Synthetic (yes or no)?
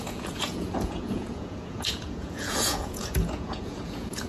yes